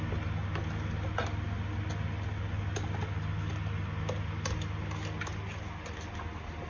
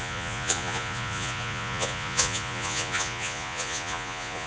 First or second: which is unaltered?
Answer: first